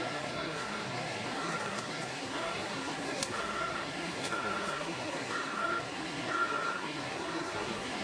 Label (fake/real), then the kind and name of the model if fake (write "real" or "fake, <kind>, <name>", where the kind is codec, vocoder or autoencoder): fake, codec, SNAC